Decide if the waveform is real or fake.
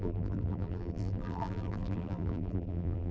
fake